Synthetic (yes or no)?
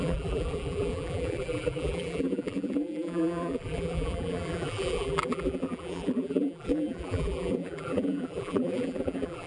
yes